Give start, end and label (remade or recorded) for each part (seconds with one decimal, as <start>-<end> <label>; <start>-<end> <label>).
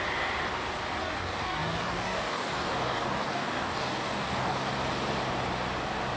0.0-1.0 recorded; 1.0-4.7 remade; 4.7-6.2 recorded